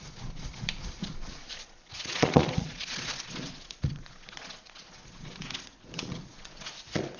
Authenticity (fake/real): fake